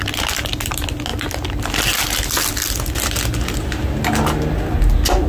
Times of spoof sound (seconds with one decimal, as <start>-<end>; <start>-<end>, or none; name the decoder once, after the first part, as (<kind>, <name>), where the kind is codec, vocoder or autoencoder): none